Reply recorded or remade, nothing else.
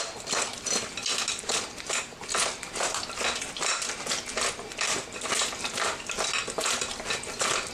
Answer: recorded